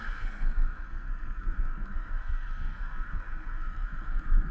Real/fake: fake